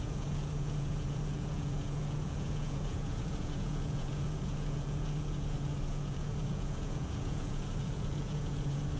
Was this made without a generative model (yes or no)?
no